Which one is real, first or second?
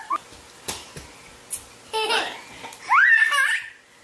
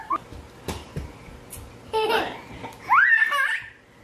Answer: first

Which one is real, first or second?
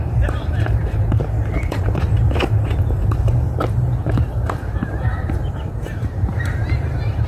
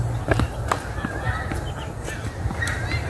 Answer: second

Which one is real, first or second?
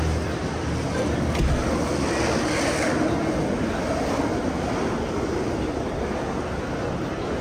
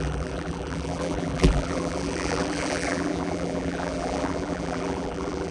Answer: first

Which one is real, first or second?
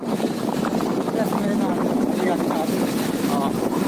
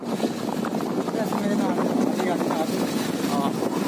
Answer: second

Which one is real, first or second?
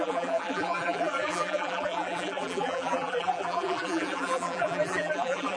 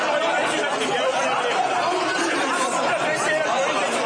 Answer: second